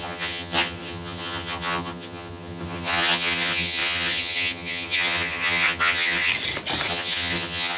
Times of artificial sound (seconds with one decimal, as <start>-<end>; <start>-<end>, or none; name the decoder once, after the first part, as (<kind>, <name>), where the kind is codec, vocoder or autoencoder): 0.0-6.3 (vocoder, HiFi-GAN); 6.9-7.8